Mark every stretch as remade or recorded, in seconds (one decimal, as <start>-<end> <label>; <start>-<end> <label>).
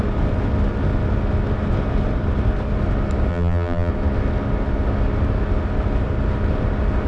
0.0-3.3 recorded; 3.3-3.9 remade; 3.9-7.1 recorded